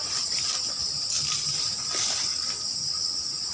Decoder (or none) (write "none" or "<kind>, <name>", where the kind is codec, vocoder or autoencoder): none